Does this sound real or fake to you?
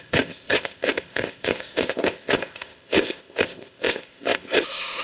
fake